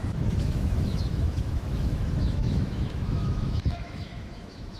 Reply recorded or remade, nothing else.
remade